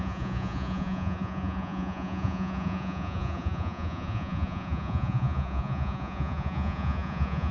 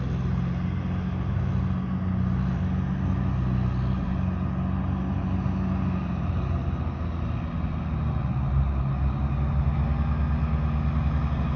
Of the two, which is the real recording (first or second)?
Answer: second